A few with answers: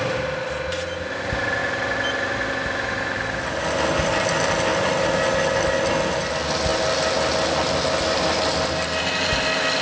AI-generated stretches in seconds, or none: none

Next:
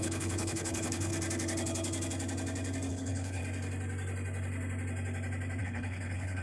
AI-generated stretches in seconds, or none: 0.0-1.1; 2.9-3.4; 5.6-6.4

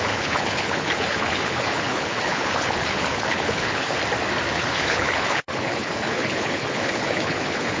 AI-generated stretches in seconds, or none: 0.0-4.0; 4.5-7.8